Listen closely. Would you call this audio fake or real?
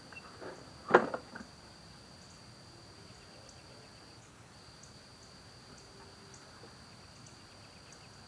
real